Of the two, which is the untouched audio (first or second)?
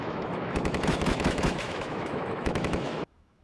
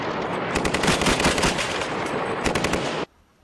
second